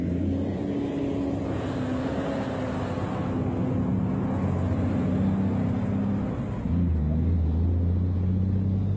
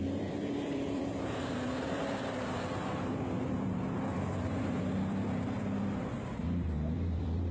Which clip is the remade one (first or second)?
second